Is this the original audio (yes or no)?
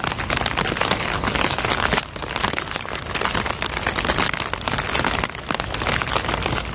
yes